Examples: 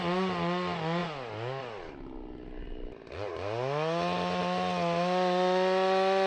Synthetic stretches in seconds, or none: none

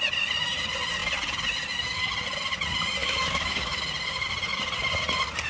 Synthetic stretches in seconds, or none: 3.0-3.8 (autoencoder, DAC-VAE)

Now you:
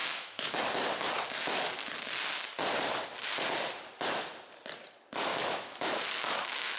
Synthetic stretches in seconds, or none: 0.0-0.6 (autoencoder, DAC-VAE); 5.3-6.8

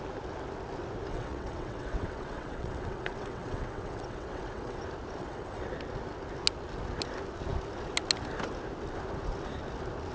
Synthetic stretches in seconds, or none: 1.1-4.8 (vocoder, WaveNeXt); 5.2-5.7

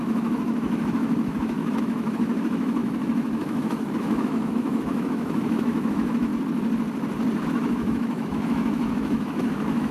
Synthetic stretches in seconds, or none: 0.0-6.3 (autoencoder, DAC-VAE); 7.5-9.9